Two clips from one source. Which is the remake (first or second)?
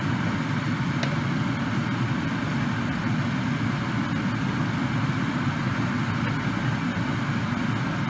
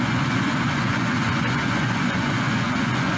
second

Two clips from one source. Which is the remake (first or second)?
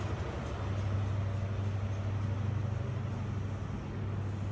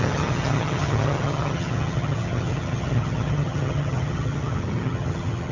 second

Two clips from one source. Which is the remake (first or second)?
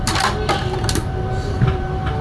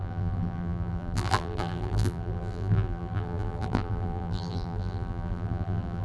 second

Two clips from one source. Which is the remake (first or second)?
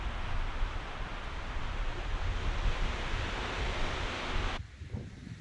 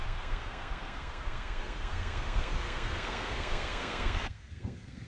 second